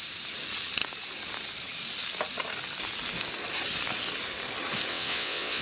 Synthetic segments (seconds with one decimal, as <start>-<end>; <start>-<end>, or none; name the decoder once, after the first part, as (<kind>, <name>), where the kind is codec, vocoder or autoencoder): 4.9-5.6 (vocoder, WaveNeXt)